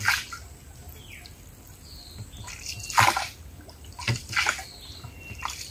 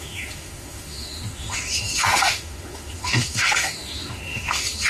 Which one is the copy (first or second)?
second